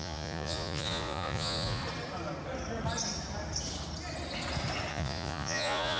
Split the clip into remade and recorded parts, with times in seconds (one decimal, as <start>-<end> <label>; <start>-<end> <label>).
0.0-1.8 remade; 1.8-4.9 recorded; 4.9-6.0 remade